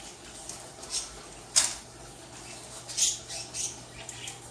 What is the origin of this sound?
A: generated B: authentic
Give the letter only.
B